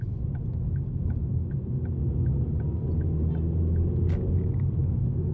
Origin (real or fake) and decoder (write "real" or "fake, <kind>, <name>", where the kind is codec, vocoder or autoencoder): real